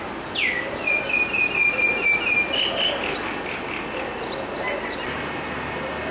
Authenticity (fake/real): real